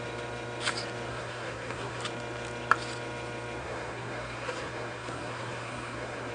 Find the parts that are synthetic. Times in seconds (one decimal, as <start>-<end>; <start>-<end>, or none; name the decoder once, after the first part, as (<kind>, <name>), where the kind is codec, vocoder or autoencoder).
1.1-2.0 (codec, SNAC); 3.6-6.3